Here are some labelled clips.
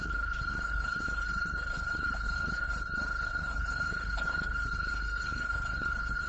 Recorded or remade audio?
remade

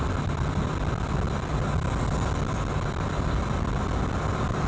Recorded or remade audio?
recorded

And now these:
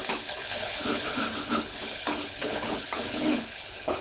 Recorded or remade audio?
remade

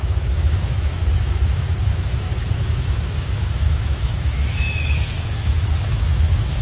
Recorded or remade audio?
remade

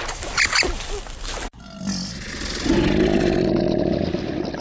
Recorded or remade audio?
recorded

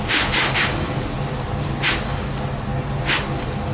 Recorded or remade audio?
recorded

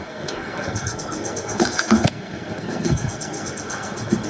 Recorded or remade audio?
remade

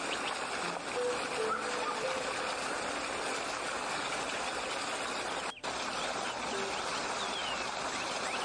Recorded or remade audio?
recorded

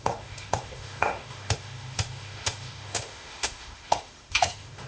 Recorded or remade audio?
remade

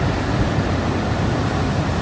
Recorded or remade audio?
recorded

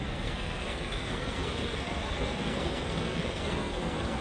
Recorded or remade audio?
remade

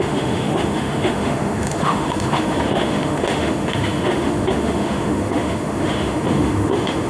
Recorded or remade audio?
remade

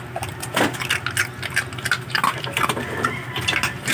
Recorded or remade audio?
recorded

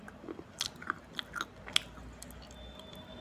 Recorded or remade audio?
recorded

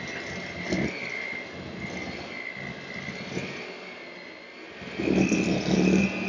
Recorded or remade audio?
recorded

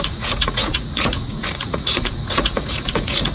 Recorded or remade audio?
remade